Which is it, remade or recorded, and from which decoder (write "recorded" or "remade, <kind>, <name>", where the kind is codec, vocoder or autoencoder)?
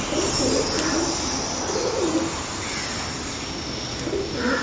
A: recorded